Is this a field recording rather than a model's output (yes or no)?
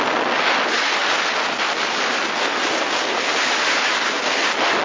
yes